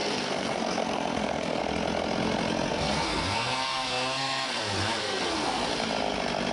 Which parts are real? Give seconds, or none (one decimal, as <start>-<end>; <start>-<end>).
1.6-2.7; 4.6-5.0; 5.6-6.5